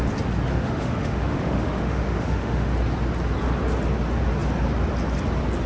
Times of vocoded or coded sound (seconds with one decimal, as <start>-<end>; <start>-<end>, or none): 0.5-2.7